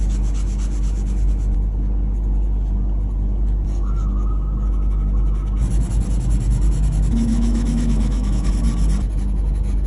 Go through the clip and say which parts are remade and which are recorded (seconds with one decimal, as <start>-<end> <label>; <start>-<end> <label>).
0.0-7.3 recorded; 7.3-8.5 remade; 8.5-9.9 recorded